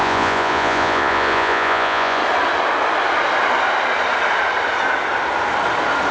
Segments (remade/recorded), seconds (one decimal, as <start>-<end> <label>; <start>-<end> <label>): 0.0-2.2 remade; 2.2-6.1 recorded